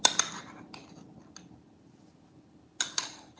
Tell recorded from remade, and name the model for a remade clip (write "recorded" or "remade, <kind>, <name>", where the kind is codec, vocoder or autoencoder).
recorded